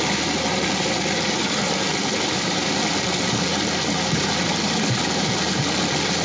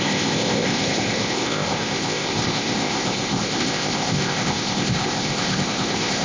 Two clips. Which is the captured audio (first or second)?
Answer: first